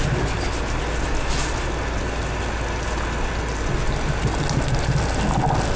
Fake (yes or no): no